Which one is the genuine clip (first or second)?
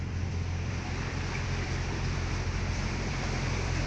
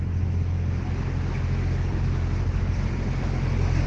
second